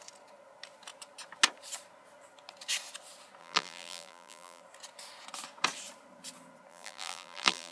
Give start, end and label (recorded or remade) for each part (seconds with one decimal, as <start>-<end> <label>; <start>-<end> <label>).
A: 0.0-3.4 recorded; 3.4-4.6 remade; 4.6-6.7 recorded; 6.7-7.7 remade